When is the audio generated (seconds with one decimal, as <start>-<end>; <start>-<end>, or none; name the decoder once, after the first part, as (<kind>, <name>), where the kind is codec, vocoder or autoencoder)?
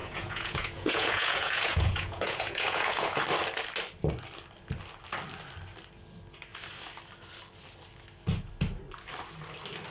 0.0-3.2 (vocoder, Vocos)